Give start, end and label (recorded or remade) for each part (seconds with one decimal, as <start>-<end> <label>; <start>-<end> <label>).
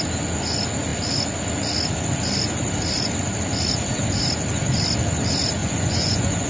0.0-5.6 recorded; 5.6-6.5 remade